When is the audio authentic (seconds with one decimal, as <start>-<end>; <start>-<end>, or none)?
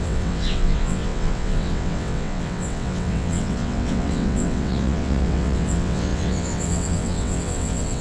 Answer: none